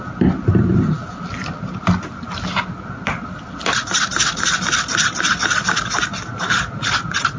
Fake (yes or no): no